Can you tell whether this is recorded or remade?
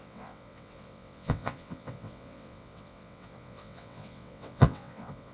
remade